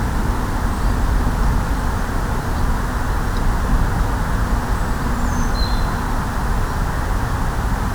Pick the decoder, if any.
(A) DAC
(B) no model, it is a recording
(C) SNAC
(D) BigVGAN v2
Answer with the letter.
B